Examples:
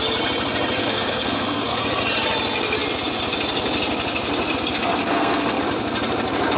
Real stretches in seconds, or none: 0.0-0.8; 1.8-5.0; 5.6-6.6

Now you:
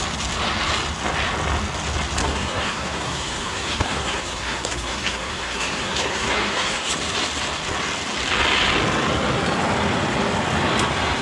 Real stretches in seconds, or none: 0.0-2.2; 6.9-11.2

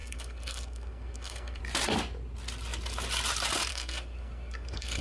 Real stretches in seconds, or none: 1.6-3.7

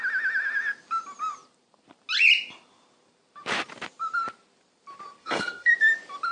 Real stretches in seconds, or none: 0.0-5.2; 5.7-6.3

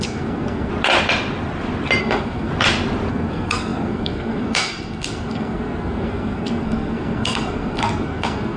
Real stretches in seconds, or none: 0.7-2.0; 2.5-3.1

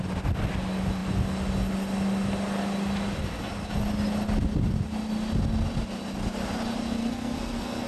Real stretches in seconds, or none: 0.0-7.0

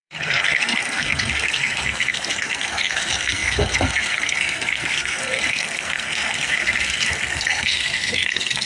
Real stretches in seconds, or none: none